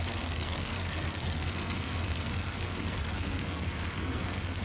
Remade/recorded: remade